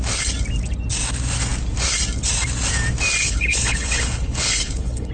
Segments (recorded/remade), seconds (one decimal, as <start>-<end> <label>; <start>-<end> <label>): 0.0-3.2 recorded; 3.2-5.1 remade